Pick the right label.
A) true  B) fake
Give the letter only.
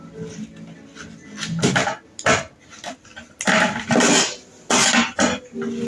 A